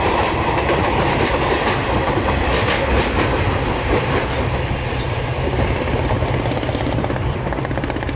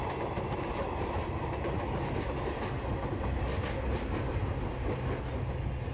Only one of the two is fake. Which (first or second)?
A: first